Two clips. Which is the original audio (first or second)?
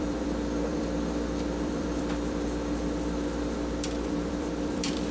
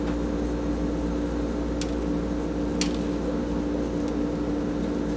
second